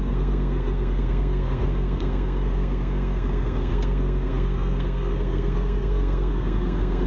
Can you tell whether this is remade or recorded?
remade